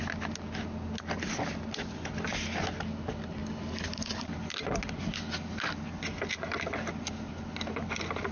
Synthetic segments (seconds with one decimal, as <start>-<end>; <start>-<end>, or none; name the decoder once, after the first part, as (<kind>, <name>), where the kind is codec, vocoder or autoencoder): none